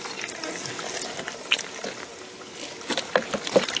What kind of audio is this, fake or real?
real